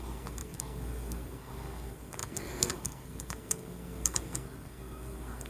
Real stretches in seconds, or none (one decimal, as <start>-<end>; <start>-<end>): none